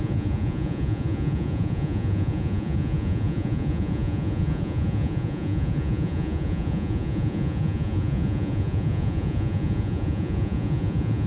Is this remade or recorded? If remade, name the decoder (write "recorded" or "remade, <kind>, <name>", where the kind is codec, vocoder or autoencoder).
remade, vocoder, Vocos